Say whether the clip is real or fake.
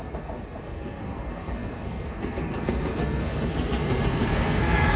fake